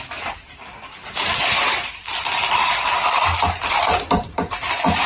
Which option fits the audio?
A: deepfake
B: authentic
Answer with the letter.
B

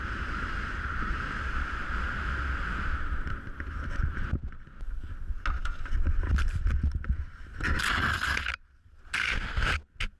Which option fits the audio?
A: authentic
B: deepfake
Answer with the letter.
A